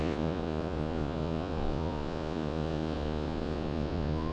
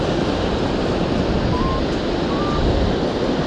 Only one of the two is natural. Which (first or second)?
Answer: second